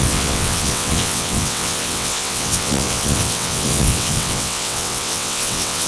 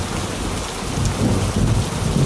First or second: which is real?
second